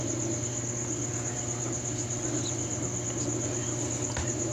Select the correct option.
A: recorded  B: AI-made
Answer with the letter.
A